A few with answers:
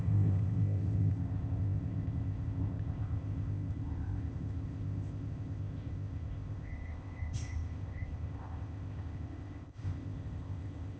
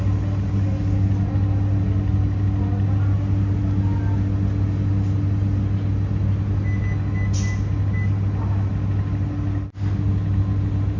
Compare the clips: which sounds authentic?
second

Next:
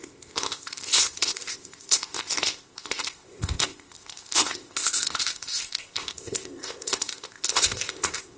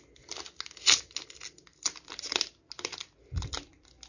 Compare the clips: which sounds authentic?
second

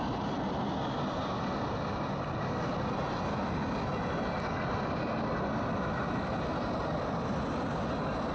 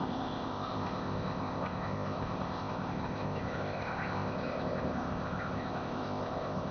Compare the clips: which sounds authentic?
first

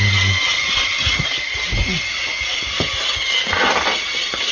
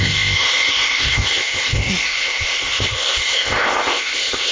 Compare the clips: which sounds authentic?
first